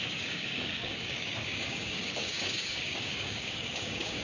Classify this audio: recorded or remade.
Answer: remade